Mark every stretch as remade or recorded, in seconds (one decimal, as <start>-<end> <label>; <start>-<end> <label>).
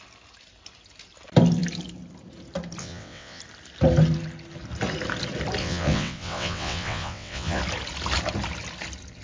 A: 0.0-2.8 recorded; 2.8-3.4 remade; 3.4-5.6 recorded; 5.6-7.6 remade; 7.6-9.2 recorded